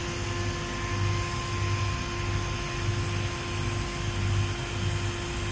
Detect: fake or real real